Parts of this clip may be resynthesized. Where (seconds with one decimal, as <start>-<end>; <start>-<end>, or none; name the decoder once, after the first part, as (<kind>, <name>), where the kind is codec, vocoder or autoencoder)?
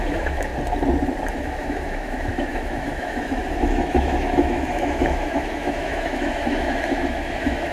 0.0-0.5 (autoencoder, DAC-VAE); 1.3-7.7